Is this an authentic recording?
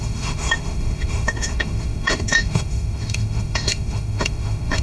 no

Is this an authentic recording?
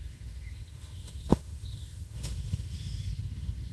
no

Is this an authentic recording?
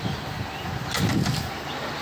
yes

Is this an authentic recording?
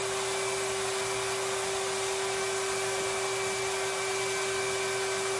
yes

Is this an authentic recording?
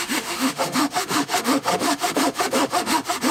no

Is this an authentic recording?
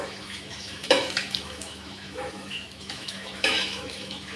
no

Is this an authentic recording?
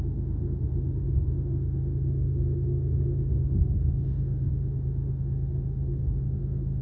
no